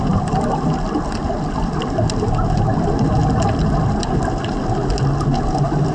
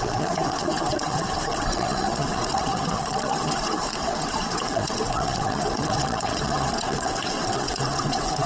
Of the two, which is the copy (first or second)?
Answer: second